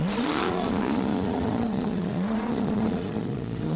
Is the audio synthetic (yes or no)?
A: yes